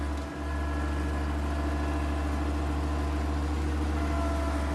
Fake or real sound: real